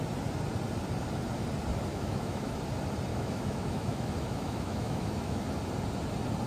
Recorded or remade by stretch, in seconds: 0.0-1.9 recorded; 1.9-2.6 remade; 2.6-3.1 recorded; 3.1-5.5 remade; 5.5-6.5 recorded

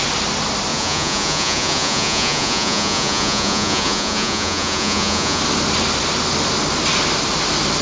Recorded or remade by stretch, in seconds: 0.0-0.7 recorded; 0.7-5.4 remade; 5.4-7.8 recorded

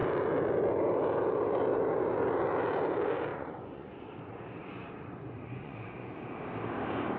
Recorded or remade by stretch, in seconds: 0.0-3.3 recorded; 3.3-6.2 remade; 6.2-7.2 recorded

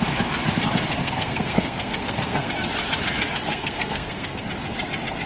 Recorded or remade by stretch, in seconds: 0.0-1.0 recorded; 1.0-2.5 remade; 2.5-3.5 recorded; 3.5-4.4 remade; 4.4-5.3 recorded

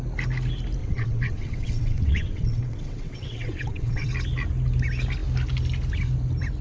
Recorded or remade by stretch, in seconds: 0.0-0.8 recorded; 0.8-4.1 remade; 4.1-6.6 recorded

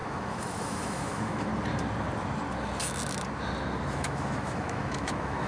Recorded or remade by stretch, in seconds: 0.0-1.5 remade; 1.5-3.9 recorded; 3.9-5.5 remade

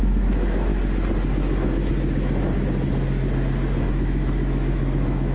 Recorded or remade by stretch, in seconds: 0.0-0.7 remade; 0.7-3.9 recorded; 3.9-5.3 remade

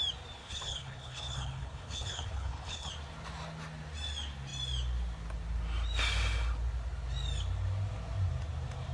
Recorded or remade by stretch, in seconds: 0.0-0.4 recorded; 0.4-2.9 remade; 2.9-8.9 recorded